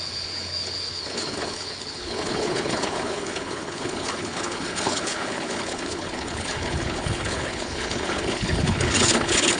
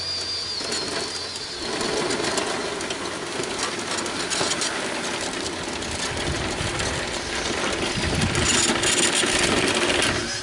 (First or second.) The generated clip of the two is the first